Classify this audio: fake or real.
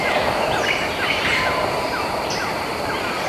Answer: real